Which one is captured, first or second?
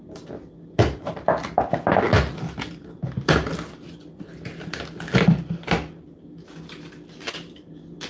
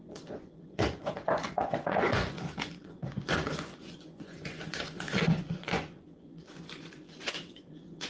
first